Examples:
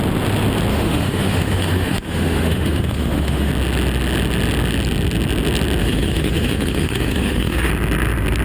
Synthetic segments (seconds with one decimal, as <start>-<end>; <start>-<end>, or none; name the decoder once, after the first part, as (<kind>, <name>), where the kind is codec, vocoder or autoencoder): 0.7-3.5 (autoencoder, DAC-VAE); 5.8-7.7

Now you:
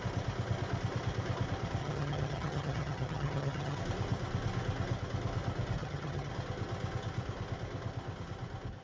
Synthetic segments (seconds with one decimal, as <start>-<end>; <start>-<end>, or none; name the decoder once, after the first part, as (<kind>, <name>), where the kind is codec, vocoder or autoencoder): 1.8-3.8 (vocoder, HiFi-GAN); 5.8-6.3

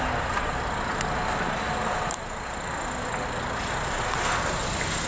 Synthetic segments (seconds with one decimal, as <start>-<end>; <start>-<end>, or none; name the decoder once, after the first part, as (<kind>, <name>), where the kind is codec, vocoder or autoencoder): none

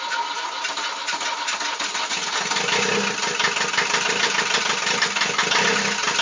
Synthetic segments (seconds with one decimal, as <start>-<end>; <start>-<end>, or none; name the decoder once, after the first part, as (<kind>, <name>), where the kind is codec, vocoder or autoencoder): none

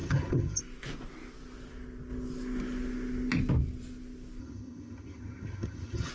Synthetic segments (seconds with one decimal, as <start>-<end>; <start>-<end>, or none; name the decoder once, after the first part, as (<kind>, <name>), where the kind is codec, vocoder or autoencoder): 0.0-0.6 (vocoder, HiFi-GAN); 4.4-6.1

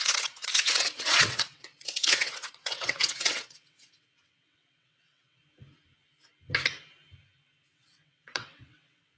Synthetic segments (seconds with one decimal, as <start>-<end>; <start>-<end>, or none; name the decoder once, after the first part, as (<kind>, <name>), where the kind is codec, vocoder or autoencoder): 0.0-5.4 (vocoder, WaveNeXt); 7.7-9.2